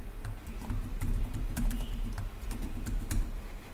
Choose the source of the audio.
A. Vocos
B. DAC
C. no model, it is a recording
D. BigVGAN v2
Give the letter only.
D